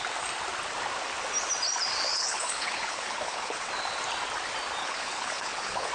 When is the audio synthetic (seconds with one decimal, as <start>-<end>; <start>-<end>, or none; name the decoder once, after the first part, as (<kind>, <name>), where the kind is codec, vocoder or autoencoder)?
2.1-3.7 (codec, HILCodec); 4.8-5.9